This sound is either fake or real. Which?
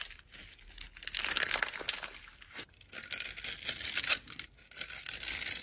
real